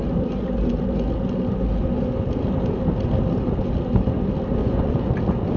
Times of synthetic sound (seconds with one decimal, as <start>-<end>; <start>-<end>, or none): 4.6-5.1